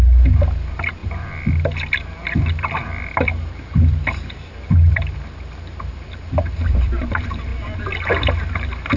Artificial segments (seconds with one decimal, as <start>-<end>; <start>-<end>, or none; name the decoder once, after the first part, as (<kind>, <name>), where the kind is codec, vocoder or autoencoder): 0.0-7.5 (vocoder, BigVGAN v2); 8.5-9.0